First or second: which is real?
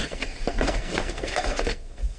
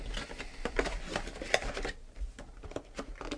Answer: second